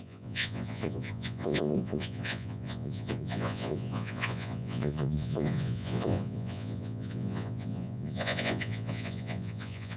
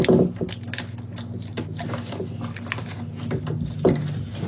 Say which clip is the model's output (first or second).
first